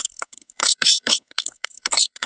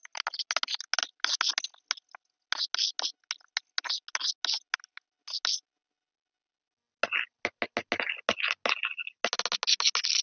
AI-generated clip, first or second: first